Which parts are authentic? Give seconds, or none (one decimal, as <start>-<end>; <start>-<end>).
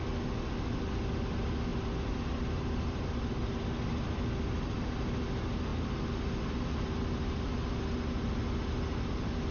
0.0-1.7; 3.5-9.5